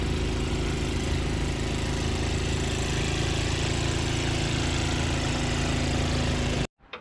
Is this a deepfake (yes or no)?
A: no